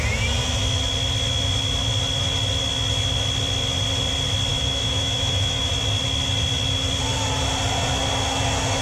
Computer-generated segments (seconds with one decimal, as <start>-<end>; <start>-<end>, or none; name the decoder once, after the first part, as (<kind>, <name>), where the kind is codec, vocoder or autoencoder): 4.5-5.7 (autoencoder, DAC-VAE)